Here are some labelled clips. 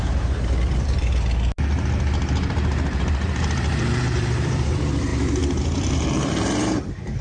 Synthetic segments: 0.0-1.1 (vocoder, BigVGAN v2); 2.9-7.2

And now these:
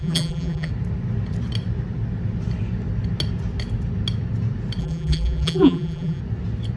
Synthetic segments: 0.0-0.7 (vocoder, BigVGAN v2); 4.8-6.2

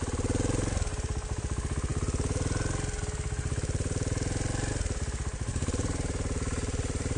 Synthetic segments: 0.9-1.4 (vocoder, BigVGAN v2); 5.5-7.2

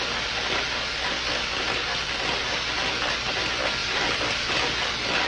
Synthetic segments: 3.8-4.5 (vocoder, BigVGAN v2)